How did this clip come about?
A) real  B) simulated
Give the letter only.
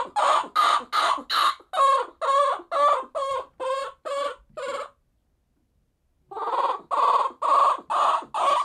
A